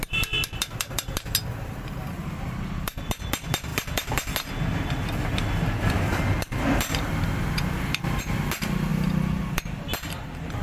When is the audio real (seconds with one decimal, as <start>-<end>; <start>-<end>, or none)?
0.0-3.7; 8.2-8.9; 9.6-10.6